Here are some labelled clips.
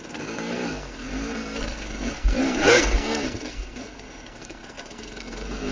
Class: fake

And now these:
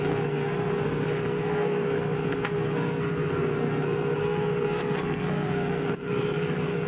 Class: fake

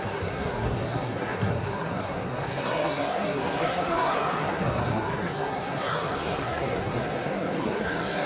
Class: fake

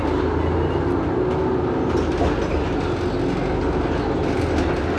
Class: real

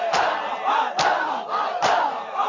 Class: real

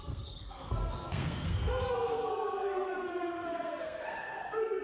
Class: fake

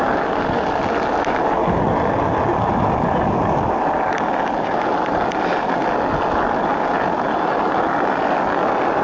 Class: real